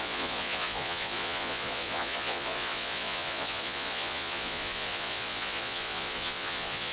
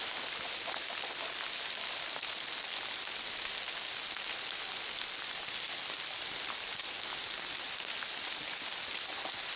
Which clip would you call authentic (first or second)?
second